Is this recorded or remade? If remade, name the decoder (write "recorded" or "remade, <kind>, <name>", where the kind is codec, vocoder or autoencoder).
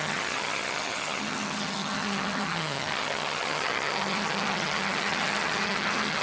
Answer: remade, vocoder, HiFi-GAN